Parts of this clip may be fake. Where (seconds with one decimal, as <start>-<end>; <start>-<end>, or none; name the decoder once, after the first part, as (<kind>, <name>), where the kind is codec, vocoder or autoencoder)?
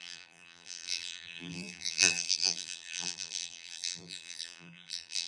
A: 0.0-5.3 (vocoder, BigVGAN v2)